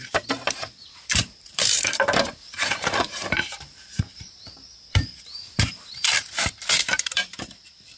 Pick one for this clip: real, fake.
fake